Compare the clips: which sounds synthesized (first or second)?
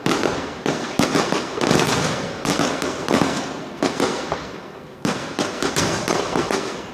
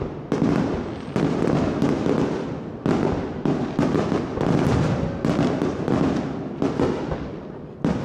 first